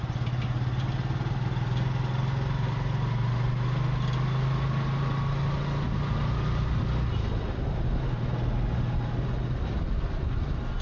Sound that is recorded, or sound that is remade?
recorded